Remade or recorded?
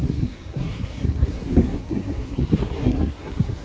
remade